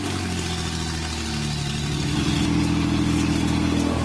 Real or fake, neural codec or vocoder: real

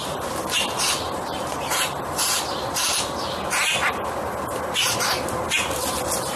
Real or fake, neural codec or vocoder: real